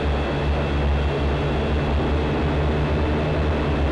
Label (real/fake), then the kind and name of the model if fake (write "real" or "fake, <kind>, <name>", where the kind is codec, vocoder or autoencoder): real